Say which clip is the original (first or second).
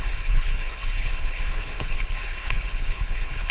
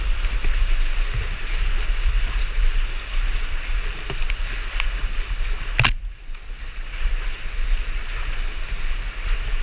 second